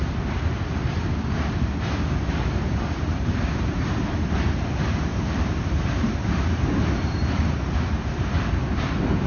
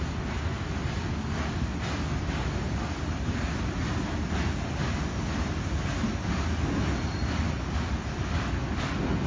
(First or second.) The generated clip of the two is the first